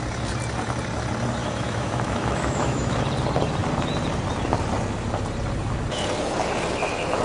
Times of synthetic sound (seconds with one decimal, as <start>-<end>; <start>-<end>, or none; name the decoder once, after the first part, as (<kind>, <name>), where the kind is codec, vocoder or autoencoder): 1.4-3.0 (autoencoder, DAC-VAE)